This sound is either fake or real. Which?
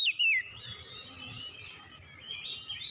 fake